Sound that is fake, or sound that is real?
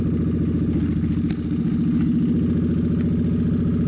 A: real